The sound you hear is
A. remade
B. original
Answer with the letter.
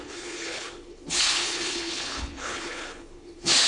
A